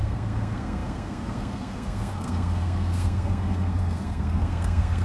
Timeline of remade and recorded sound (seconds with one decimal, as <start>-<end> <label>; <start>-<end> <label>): 0.0-5.0 remade